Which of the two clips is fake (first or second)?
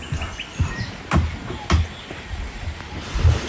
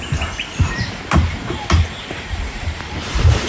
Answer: second